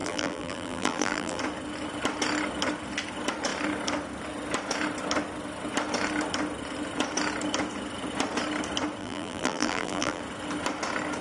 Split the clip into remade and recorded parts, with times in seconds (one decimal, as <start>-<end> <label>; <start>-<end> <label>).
0.0-1.4 remade; 1.4-9.0 recorded; 9.0-10.2 remade; 10.2-11.2 recorded